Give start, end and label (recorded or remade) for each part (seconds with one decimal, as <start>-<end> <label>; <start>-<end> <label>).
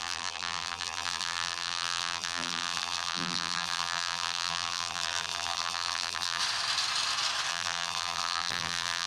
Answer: 0.0-6.4 remade; 6.4-7.5 recorded; 7.5-9.1 remade